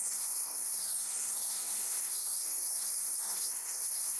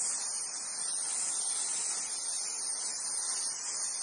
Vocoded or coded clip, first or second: first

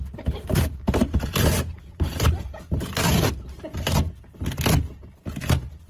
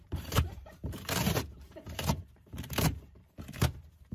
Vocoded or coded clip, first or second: second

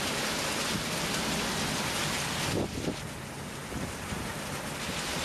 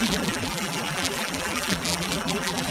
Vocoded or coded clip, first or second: second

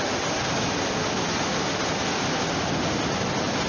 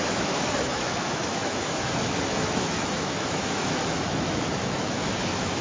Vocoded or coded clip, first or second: second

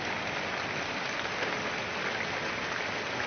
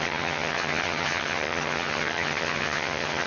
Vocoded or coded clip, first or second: second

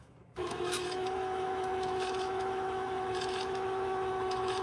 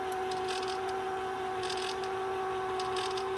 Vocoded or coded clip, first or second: first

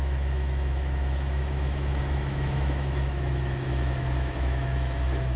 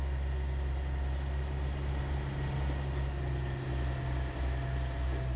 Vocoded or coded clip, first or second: first